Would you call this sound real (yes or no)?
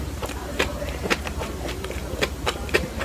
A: no